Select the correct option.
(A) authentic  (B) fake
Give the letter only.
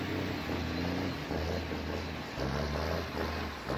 A